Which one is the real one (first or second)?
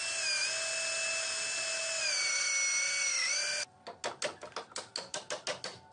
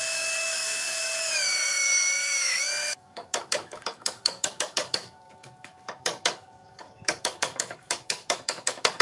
first